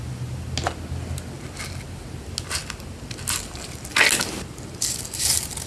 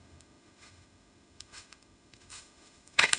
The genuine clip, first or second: first